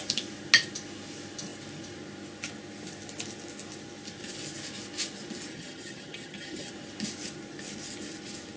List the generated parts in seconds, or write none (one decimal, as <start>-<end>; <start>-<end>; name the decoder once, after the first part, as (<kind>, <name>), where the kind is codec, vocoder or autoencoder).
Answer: 5.5-6.7 (vocoder, HiFi-GAN)